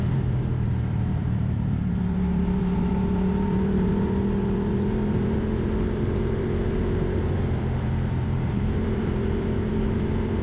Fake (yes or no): yes